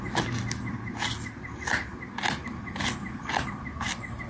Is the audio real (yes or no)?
yes